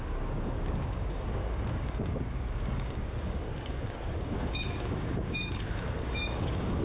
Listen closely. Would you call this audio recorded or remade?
remade